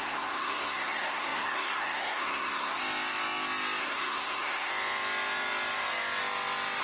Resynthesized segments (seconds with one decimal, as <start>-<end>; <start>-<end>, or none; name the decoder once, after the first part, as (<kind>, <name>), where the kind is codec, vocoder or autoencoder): 0.0-2.8 (codec, SNAC); 3.8-4.7